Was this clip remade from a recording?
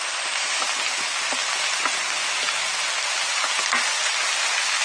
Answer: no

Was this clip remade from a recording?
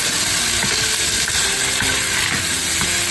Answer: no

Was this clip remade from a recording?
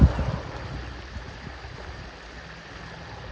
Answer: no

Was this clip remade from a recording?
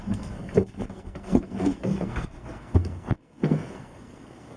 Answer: yes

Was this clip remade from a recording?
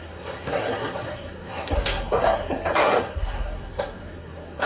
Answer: yes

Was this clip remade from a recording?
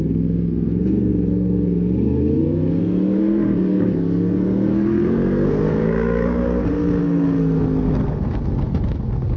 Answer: yes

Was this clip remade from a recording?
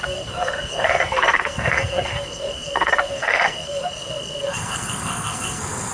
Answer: yes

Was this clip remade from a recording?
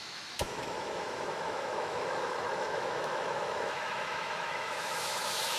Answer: yes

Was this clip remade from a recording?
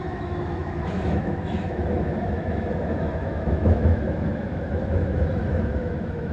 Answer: yes